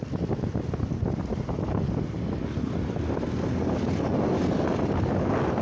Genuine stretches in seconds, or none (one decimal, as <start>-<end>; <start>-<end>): 0.0-5.6